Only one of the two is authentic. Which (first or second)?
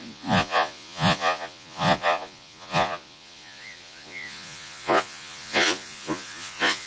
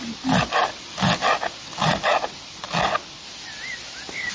second